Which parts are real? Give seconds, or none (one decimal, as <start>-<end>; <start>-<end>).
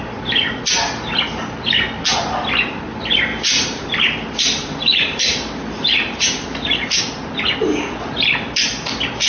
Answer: 0.0-3.3; 7.0-9.3